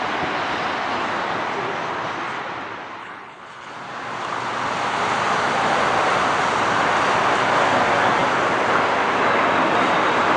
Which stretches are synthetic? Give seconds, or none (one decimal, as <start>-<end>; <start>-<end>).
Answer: 3.0-3.7